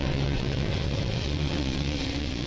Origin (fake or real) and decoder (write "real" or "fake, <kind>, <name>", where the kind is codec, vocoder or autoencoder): fake, vocoder, WaveNeXt